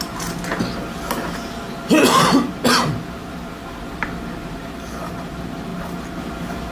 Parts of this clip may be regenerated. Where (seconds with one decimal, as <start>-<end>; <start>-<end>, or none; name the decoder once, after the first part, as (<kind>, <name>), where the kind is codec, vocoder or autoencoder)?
none